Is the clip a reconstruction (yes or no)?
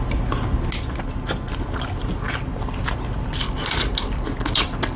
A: no